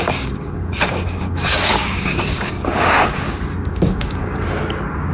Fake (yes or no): yes